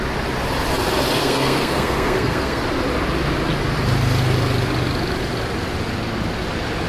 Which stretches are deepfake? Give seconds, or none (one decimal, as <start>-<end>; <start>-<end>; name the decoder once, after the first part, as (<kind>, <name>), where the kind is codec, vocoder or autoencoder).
1.2-2.6 (codec, SNAC)